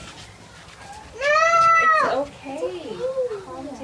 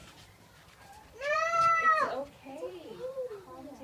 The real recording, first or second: first